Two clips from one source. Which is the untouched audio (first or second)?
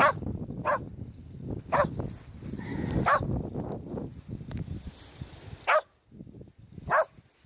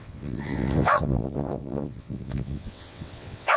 first